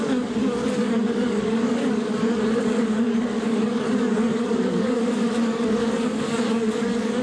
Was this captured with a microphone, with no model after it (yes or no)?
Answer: no